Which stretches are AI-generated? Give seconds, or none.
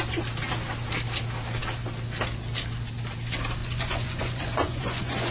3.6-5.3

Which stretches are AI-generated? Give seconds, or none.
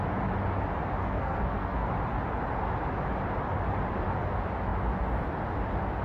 1.0-1.9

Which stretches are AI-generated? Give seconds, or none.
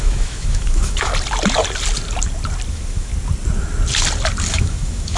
0.0-1.1; 2.7-3.1; 4.5-5.2